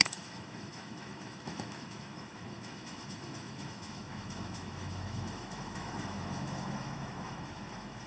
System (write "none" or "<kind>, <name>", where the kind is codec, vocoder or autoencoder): autoencoder, DAC-VAE